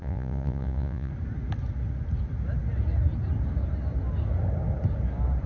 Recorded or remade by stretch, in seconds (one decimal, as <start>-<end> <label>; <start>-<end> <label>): 0.0-1.1 remade; 1.1-5.5 recorded